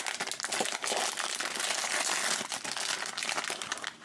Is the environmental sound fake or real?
real